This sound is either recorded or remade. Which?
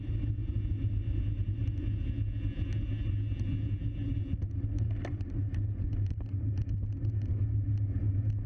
recorded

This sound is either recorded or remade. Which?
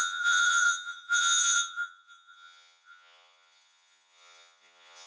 remade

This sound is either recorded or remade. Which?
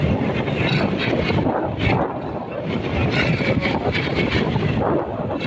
recorded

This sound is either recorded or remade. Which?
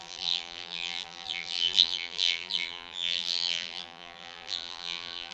remade